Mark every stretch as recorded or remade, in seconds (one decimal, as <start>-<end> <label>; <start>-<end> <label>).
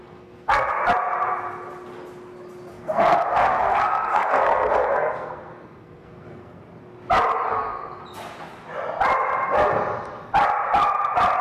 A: 0.0-0.7 remade; 0.7-2.7 recorded; 2.7-6.6 remade; 6.6-7.5 recorded; 7.5-8.0 remade; 8.0-11.4 recorded